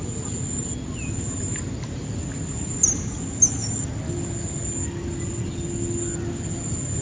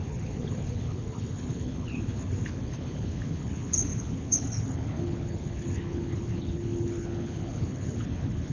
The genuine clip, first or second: first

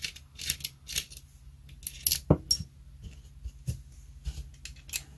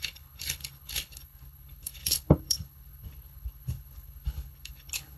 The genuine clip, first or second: first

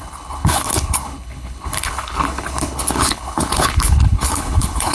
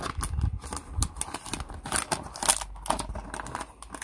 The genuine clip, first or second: second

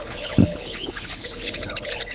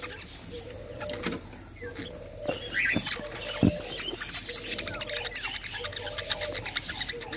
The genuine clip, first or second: second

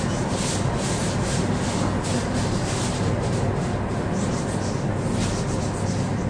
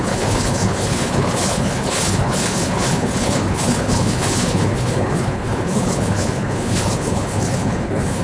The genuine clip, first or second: first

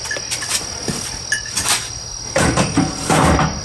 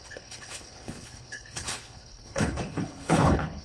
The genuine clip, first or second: first